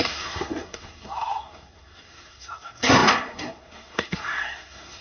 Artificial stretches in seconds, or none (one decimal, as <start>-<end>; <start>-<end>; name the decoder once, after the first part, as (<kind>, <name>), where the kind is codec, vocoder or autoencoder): 0.0-5.0 (codec, SNAC)